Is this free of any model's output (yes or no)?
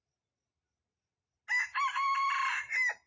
yes